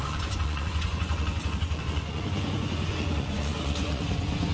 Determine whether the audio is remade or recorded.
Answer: remade